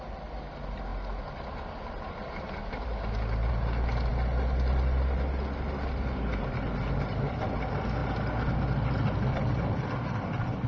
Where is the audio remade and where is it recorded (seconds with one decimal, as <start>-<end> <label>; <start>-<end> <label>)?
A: 0.0-10.7 recorded